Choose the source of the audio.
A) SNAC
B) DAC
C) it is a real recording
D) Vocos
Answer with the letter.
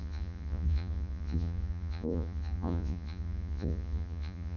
D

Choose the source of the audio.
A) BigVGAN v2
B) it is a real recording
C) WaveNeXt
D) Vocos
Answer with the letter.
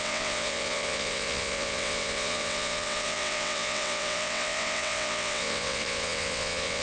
C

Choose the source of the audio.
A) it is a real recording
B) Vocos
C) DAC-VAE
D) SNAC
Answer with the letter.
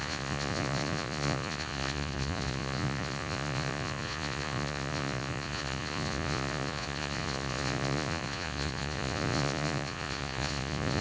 B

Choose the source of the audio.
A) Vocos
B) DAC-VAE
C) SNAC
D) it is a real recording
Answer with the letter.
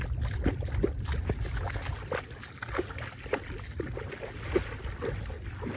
D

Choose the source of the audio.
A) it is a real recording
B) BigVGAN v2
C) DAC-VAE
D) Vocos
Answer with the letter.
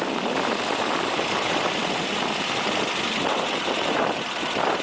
A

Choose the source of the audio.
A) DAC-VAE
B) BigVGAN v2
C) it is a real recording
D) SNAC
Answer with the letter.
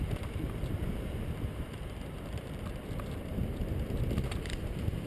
B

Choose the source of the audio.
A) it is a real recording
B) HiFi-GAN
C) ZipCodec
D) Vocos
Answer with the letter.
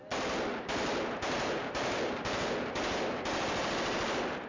A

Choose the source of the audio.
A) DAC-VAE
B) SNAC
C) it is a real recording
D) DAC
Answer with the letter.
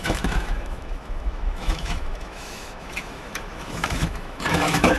A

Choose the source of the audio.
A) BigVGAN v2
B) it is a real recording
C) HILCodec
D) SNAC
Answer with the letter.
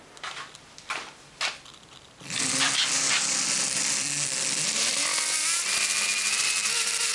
A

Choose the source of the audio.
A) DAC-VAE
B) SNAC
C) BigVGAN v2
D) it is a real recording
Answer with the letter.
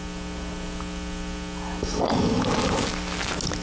D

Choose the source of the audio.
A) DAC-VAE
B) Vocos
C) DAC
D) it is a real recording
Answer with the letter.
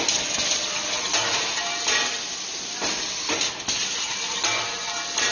D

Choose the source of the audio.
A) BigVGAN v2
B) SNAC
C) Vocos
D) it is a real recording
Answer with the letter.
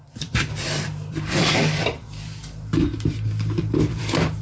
A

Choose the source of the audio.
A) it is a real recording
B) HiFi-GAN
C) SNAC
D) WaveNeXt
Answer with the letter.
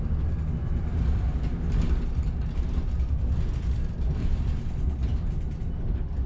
A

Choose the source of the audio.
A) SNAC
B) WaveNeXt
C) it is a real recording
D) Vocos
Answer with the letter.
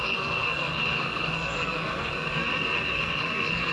A